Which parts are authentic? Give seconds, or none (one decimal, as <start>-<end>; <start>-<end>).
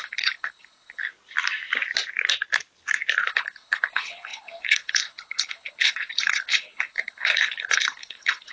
1.1-3.3